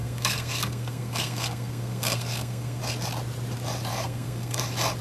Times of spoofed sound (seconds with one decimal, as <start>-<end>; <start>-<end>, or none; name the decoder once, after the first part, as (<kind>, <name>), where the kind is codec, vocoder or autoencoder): 0.0-2.8 (codec, SNAC); 3.9-4.6